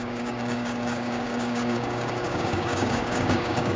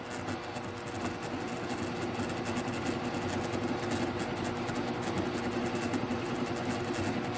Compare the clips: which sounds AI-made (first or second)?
first